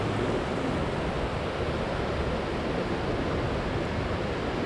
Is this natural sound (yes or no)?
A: yes